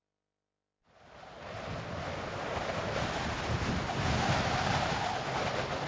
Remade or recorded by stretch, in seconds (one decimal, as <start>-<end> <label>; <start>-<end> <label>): 0.0-5.9 recorded